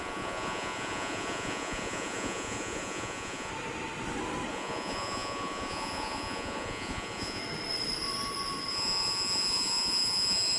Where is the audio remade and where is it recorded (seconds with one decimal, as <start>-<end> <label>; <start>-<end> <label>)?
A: 0.0-3.5 remade; 3.5-4.5 recorded; 4.5-7.4 remade; 7.4-8.7 recorded; 8.7-10.6 remade